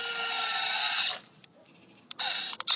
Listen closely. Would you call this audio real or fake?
real